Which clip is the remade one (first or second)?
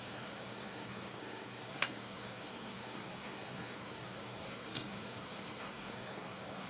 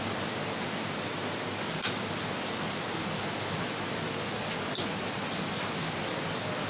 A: first